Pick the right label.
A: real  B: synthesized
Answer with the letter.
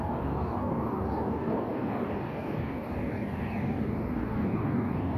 B